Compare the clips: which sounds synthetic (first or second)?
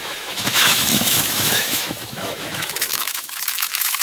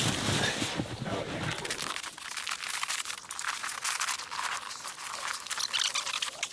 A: first